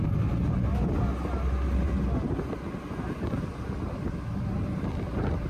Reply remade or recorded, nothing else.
recorded